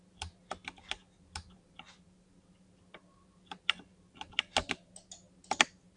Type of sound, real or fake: real